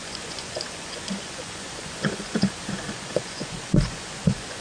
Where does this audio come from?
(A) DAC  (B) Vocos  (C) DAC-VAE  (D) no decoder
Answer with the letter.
B